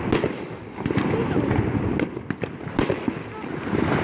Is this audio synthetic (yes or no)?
no